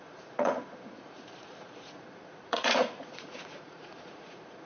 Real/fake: fake